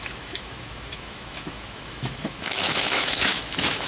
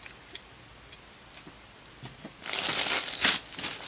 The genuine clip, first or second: second